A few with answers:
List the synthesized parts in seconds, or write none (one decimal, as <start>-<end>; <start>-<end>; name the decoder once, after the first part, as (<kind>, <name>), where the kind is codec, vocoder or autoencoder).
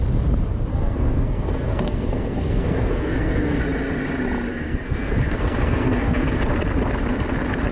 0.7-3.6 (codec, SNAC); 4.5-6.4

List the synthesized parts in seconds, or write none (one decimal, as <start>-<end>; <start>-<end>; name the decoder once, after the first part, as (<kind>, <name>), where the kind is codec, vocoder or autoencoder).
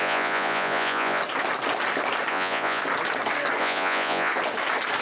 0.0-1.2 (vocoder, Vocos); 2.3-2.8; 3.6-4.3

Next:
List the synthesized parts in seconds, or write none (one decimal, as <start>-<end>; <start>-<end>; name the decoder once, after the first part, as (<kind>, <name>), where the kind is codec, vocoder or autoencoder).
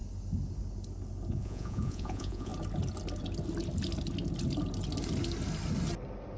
1.3-2.5 (vocoder, Vocos)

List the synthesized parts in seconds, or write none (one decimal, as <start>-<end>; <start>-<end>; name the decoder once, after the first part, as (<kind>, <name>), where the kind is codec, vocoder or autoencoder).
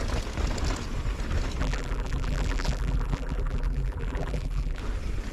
1.6-4.8 (vocoder, BigVGAN v2)